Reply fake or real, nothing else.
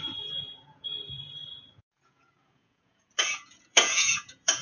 fake